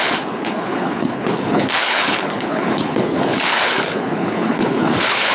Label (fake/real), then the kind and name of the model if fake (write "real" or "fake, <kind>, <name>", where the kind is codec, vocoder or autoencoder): fake, codec, HILCodec